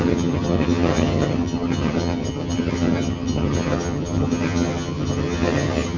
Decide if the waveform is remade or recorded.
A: remade